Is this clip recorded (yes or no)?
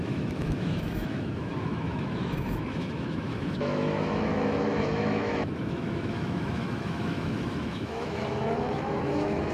no